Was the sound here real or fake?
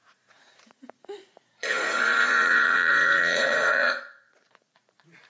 fake